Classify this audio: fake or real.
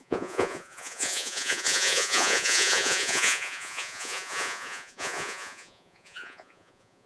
fake